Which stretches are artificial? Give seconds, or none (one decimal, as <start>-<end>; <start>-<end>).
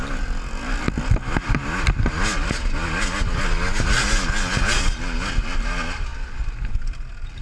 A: none